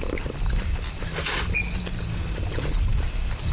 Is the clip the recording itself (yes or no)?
yes